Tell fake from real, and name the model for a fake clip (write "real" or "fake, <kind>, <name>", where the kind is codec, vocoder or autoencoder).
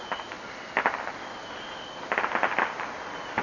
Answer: real